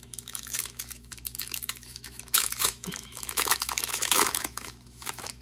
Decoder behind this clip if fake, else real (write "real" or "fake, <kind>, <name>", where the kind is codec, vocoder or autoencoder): fake, autoencoder, DAC-VAE